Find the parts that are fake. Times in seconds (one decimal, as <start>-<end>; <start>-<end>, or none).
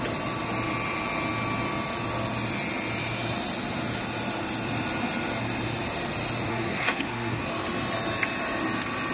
6.5-7.4